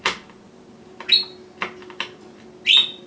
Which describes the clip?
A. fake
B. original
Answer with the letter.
B